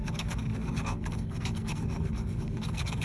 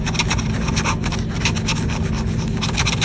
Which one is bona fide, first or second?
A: second